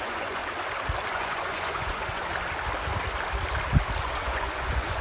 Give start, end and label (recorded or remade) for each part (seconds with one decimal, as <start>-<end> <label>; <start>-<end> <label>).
0.0-0.4 remade; 0.4-1.1 recorded; 1.1-2.2 remade; 2.2-4.0 recorded; 4.0-5.0 remade